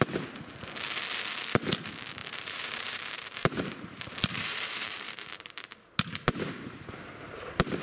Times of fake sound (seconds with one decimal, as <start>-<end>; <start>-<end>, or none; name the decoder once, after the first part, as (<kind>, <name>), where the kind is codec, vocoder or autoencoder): 2.2-5.5 (vocoder, BigVGAN v2)